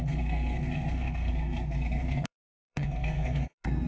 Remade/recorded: remade